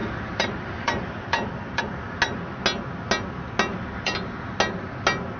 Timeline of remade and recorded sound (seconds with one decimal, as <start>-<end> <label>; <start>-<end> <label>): 0.0-1.8 remade; 1.8-3.7 recorded; 3.7-4.3 remade; 4.3-5.4 recorded